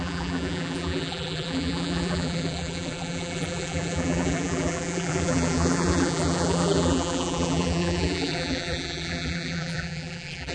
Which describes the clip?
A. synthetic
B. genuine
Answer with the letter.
A